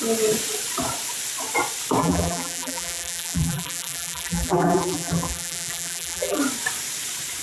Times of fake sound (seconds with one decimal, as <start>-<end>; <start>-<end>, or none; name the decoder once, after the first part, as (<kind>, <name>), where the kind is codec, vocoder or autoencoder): 2.0-6.4 (vocoder, BigVGAN v2)